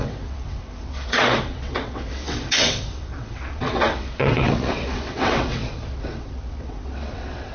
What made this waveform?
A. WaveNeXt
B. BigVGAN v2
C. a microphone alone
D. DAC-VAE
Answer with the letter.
A